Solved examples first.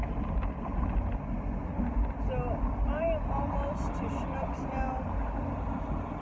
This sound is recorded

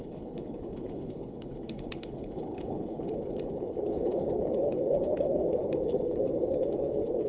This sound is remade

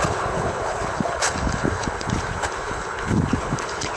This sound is remade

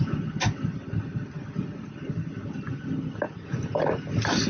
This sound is recorded